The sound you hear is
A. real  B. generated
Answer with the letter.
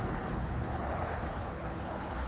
B